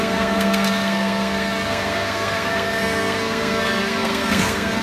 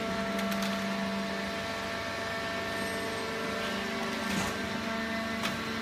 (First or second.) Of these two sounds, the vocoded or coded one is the first